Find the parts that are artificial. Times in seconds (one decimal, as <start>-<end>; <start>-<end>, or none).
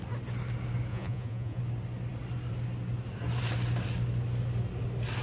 0.9-1.6